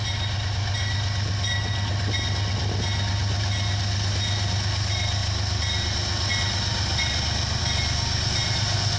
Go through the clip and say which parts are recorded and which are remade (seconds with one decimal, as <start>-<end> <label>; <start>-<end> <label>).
0.0-9.0 recorded